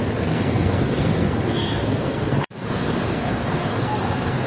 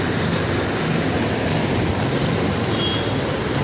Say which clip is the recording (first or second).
second